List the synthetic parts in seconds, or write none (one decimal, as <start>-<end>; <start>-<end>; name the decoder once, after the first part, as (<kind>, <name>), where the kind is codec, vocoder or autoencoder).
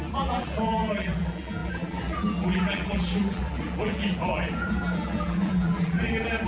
0.0-6.5 (vocoder, BigVGAN v2)